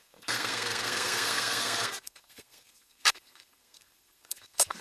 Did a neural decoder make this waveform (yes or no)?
yes